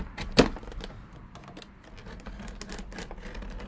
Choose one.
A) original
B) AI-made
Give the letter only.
A